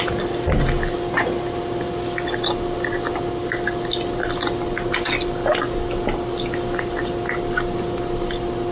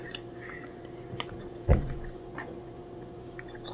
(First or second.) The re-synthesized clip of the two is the second